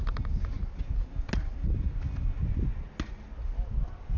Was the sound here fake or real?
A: real